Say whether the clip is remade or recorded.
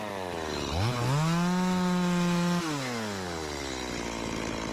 recorded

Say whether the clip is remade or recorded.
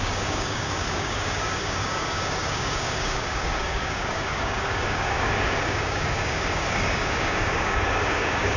remade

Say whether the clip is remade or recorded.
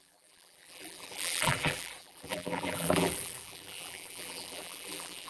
remade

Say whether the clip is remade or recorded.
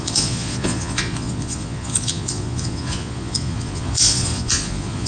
remade